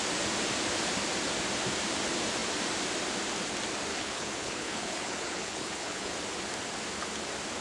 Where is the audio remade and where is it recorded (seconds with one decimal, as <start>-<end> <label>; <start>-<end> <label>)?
0.0-3.9 recorded; 3.9-6.1 remade; 6.1-7.6 recorded

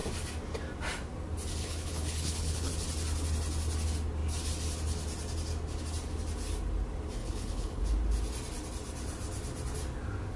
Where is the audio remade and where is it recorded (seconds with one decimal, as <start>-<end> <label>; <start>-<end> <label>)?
0.0-1.6 recorded; 1.6-2.7 remade; 2.7-7.2 recorded; 7.2-7.8 remade; 7.8-10.4 recorded